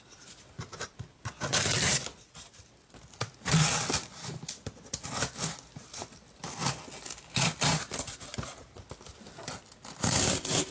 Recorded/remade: recorded